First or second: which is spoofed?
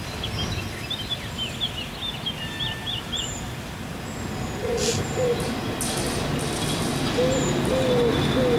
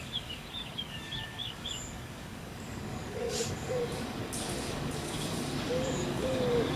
second